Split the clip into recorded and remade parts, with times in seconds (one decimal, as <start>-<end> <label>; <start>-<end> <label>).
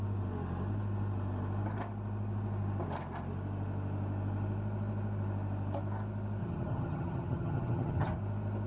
0.0-6.4 recorded; 6.4-8.2 remade; 8.2-8.7 recorded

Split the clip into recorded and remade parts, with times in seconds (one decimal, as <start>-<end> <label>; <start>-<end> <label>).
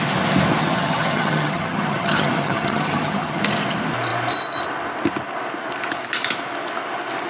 0.0-0.6 recorded; 0.6-3.4 remade; 3.4-7.3 recorded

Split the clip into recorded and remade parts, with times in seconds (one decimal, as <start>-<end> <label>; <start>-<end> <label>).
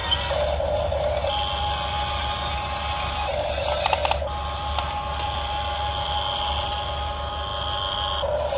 0.0-8.6 recorded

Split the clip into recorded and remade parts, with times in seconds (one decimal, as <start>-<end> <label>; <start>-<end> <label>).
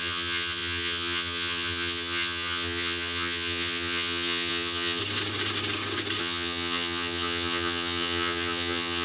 0.0-5.0 remade; 5.0-6.2 recorded; 6.2-9.0 remade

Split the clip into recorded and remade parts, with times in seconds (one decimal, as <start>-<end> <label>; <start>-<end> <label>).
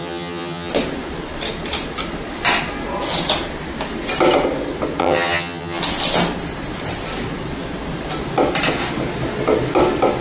0.0-0.7 remade; 0.7-5.0 recorded; 5.0-5.8 remade; 5.8-10.2 recorded